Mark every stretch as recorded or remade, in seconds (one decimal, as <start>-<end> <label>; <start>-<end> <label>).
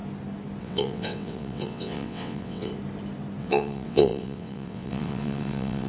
0.0-0.6 recorded; 0.6-2.7 remade; 2.7-3.4 recorded; 3.4-5.9 remade